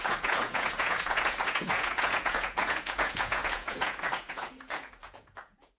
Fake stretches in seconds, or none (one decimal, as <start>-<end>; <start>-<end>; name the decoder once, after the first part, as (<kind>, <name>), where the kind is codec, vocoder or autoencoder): 0.0-5.8 (vocoder, Vocos)